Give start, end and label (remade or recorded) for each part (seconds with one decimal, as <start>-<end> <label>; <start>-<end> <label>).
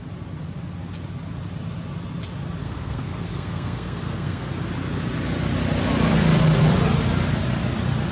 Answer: 0.0-2.6 recorded; 2.6-4.5 remade; 4.5-8.1 recorded